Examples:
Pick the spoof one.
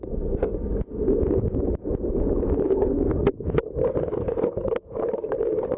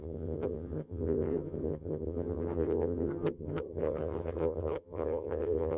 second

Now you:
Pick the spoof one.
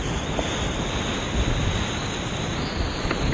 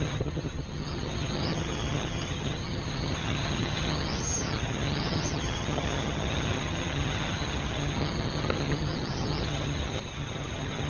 second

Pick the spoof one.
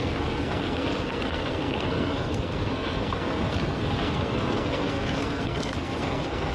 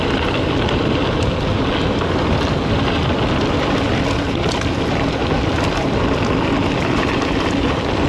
first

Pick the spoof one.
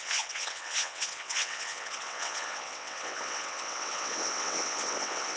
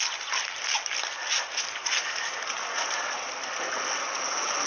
first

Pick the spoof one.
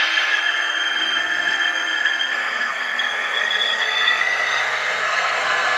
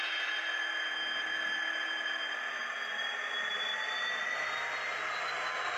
first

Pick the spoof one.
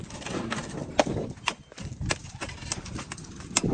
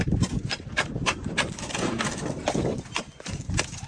second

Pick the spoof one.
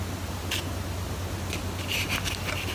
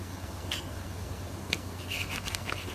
second